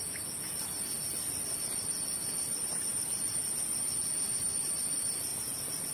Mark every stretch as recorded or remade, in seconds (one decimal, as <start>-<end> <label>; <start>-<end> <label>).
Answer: 0.0-5.9 remade